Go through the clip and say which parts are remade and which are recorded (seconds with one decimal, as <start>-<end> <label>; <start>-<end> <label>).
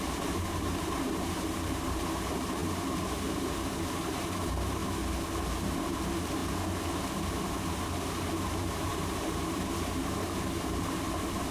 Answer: 0.0-4.8 remade; 4.8-5.4 recorded; 5.4-6.4 remade; 6.4-7.6 recorded; 7.6-11.5 remade